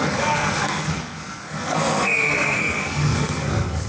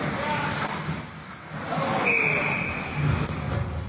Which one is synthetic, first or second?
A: first